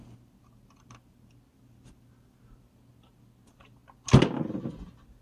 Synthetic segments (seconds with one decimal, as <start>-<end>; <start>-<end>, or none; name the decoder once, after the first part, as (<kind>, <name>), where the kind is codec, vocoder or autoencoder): none